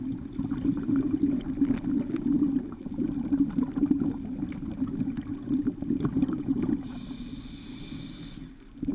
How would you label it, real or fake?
real